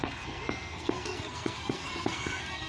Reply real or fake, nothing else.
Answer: fake